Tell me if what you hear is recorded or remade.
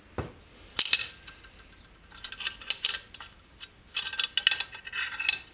recorded